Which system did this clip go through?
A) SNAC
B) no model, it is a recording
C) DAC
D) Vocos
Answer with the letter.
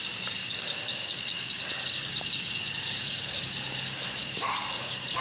C